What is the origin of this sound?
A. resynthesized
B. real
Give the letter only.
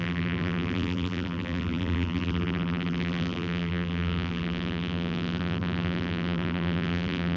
A